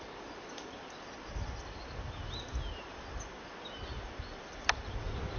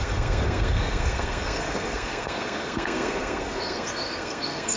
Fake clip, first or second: second